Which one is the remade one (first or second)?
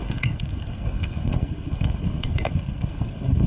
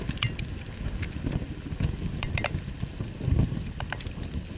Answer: first